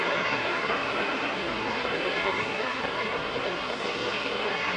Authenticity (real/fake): fake